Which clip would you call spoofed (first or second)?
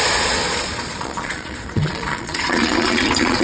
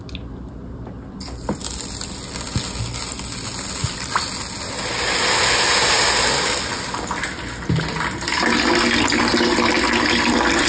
first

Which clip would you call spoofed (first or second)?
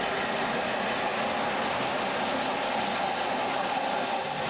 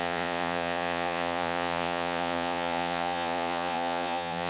second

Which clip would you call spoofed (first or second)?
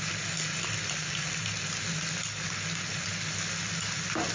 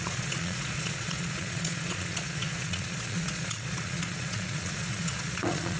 second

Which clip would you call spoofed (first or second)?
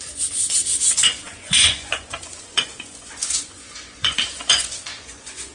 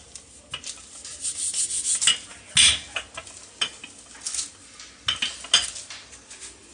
first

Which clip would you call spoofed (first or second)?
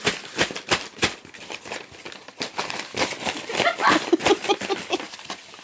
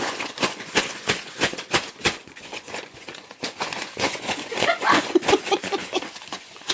second